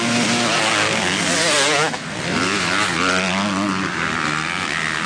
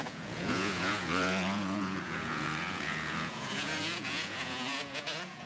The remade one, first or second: second